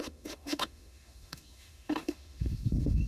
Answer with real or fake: fake